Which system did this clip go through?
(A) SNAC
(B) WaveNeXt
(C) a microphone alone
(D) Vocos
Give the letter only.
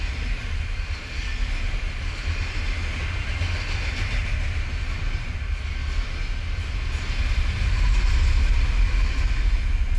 C